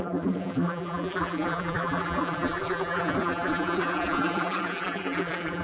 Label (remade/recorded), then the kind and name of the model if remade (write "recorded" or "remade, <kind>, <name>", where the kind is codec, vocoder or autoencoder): remade, vocoder, BigVGAN v2